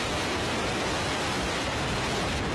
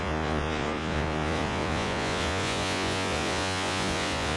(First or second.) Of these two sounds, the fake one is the second